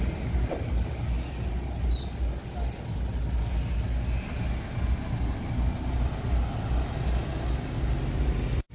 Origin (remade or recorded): recorded